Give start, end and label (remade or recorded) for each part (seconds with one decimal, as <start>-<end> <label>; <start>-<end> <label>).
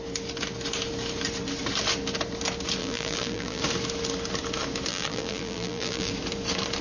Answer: 0.0-2.8 recorded; 2.8-3.6 remade; 3.6-4.9 recorded; 4.9-6.1 remade; 6.1-6.8 recorded